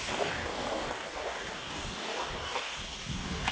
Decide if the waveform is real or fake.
fake